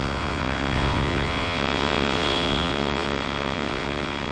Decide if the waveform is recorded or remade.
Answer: remade